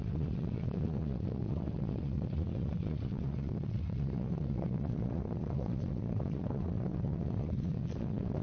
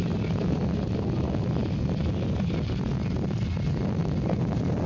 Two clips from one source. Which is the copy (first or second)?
first